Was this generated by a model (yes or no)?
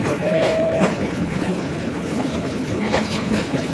yes